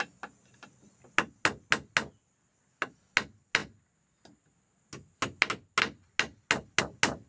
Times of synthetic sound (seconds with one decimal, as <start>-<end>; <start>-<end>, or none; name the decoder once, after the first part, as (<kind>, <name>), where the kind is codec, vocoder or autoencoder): none